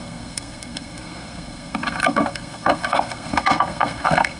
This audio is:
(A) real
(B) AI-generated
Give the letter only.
B